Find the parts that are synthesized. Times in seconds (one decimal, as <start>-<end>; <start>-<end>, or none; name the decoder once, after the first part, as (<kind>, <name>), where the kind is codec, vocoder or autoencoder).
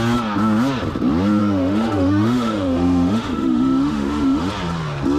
1.4-4.5 (autoencoder, DAC-VAE)